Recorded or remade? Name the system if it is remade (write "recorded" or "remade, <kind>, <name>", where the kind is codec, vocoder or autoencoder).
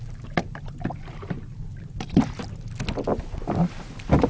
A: recorded